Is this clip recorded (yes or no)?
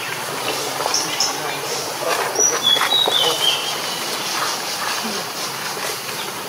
yes